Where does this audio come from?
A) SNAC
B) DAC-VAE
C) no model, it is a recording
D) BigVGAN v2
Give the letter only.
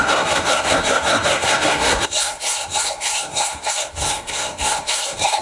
A